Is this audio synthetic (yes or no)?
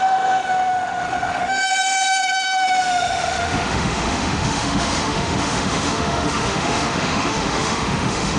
yes